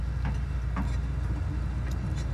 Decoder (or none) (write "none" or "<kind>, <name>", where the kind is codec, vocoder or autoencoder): none